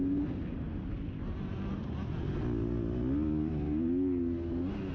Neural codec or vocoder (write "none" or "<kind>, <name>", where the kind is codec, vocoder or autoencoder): none